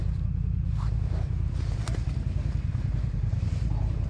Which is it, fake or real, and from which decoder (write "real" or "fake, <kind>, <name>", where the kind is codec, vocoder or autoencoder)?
fake, vocoder, BigVGAN v2